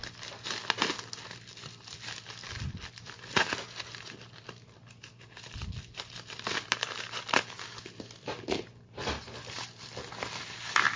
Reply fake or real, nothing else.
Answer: real